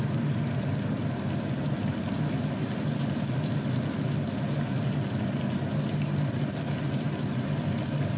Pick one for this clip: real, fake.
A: real